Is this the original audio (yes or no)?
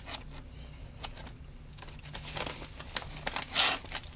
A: yes